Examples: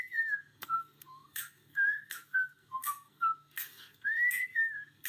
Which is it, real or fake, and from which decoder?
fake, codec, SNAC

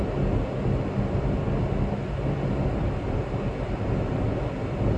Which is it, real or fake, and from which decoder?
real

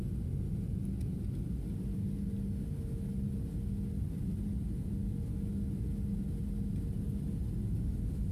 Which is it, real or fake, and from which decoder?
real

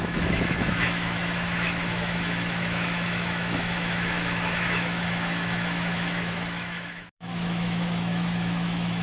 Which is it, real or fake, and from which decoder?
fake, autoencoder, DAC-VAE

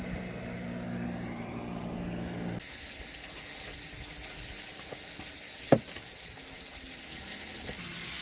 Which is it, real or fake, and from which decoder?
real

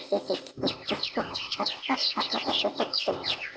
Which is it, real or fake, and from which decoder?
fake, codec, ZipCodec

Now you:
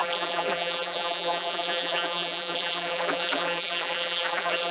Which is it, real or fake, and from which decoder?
fake, vocoder, BigVGAN v2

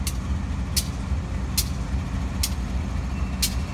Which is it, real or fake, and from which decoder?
real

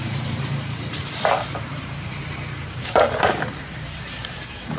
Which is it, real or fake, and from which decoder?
fake, vocoder, BigVGAN v2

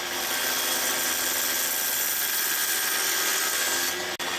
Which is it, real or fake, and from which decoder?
real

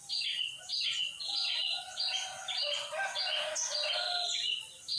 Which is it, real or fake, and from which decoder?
real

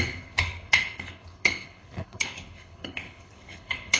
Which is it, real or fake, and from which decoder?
fake, codec, HILCodec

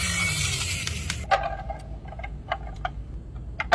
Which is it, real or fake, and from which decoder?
real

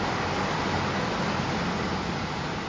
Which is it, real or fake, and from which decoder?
real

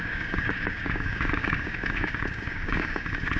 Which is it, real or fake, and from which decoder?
fake, codec, DAC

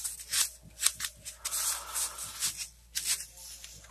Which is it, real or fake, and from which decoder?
real